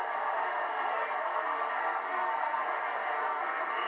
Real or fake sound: fake